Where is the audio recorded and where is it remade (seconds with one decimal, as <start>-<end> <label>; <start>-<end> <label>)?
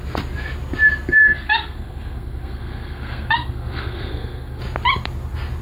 0.0-1.2 recorded; 1.2-4.6 remade; 4.6-5.6 recorded